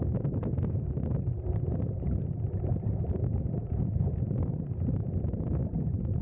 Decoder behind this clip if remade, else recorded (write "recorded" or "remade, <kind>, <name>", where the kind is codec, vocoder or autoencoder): remade, vocoder, BigVGAN v2